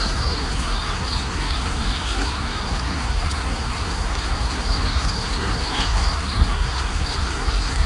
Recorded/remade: remade